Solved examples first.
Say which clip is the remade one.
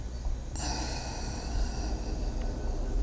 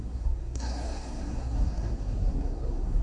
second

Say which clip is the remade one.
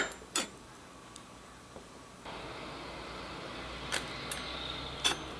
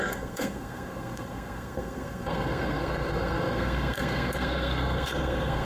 second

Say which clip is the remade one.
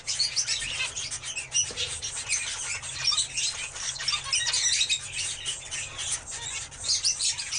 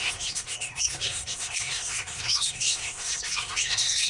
second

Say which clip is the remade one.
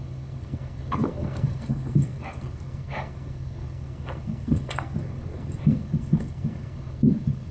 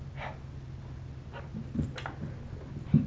first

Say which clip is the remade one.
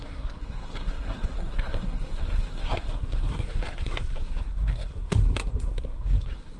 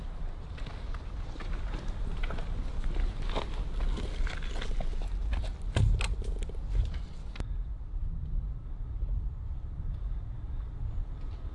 first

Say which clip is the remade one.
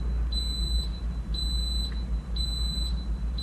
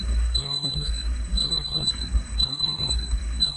second